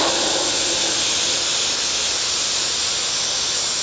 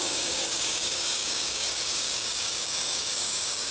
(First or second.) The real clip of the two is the first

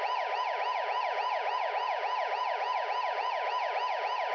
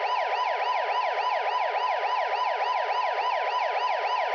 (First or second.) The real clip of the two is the second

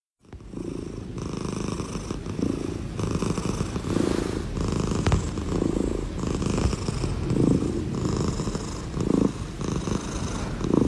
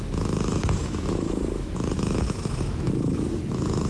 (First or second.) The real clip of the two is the first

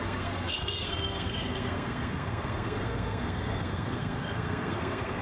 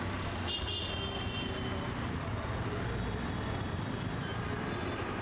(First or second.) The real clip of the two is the second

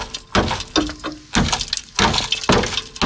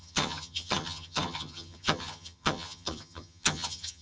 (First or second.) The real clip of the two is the first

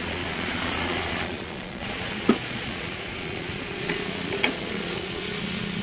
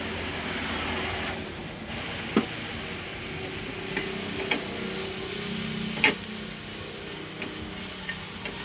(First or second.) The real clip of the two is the second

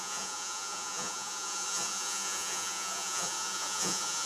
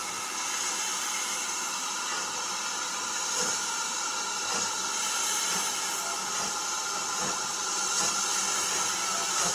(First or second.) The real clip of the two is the second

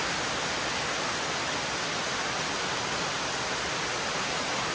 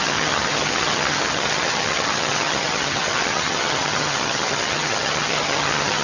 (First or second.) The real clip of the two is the first